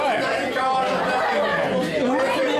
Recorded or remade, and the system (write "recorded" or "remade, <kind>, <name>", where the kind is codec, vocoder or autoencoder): recorded